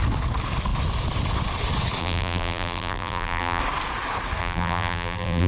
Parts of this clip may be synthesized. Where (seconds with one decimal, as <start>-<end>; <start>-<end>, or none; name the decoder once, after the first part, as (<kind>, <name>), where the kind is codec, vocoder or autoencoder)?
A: 2.0-3.6 (vocoder, BigVGAN v2); 4.4-5.5